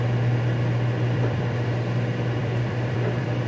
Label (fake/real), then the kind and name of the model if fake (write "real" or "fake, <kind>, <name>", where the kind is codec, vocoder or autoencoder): fake, vocoder, BigVGAN v2